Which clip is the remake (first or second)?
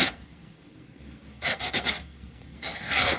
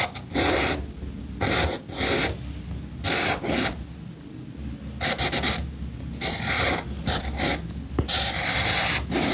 first